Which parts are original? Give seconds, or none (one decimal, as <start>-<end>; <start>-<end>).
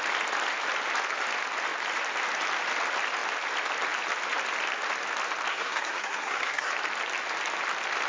0.0-5.5; 6.7-8.1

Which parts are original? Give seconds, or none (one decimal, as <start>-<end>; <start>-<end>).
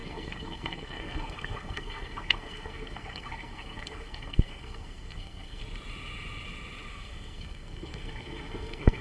5.6-6.9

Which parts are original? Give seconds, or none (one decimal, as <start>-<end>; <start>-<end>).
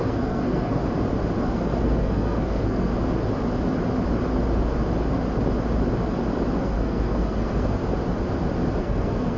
0.8-1.4; 2.9-6.5; 7.8-8.8